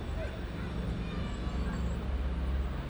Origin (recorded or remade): recorded